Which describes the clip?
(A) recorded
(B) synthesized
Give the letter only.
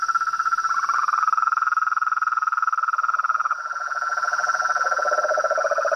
B